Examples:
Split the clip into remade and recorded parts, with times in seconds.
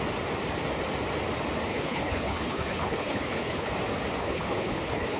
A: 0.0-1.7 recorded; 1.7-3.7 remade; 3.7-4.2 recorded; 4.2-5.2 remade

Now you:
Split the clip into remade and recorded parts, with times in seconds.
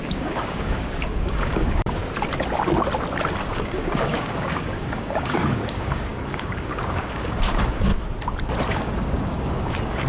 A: 0.0-2.0 remade; 2.0-3.4 recorded; 3.4-7.9 remade; 7.9-8.7 recorded; 8.7-10.1 remade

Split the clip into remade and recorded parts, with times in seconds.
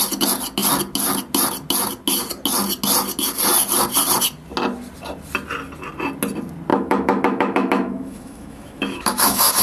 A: 0.0-6.7 recorded; 6.7-9.6 remade